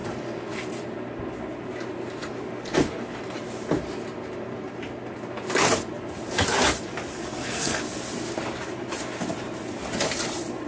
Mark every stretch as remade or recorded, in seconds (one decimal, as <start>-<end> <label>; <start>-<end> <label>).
0.0-7.1 recorded; 7.1-7.8 remade; 7.8-10.7 recorded